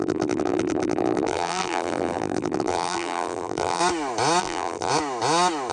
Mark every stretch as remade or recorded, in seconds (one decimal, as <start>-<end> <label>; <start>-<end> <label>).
0.0-3.8 remade; 3.8-4.4 recorded; 4.4-4.9 remade; 4.9-5.7 recorded